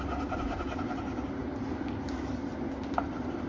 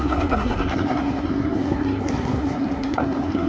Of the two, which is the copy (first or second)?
second